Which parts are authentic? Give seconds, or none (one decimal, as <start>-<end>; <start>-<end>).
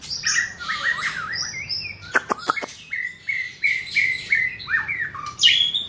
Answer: none